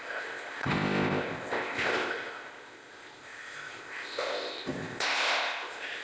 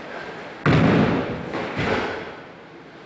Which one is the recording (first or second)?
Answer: second